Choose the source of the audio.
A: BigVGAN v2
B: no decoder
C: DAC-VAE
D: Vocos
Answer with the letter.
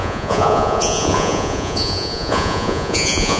D